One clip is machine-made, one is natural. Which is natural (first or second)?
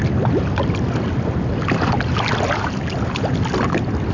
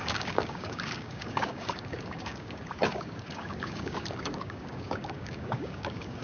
first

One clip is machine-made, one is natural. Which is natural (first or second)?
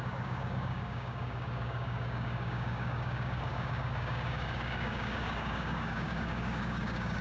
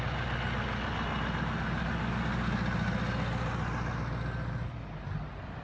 second